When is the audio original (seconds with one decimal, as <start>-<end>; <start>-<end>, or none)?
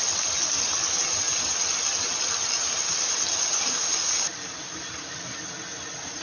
0.0-6.2